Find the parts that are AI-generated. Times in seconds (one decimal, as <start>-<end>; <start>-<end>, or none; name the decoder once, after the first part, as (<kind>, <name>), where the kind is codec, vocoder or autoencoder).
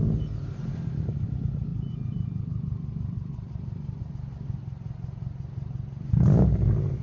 1.7-4.1 (vocoder, BigVGAN v2)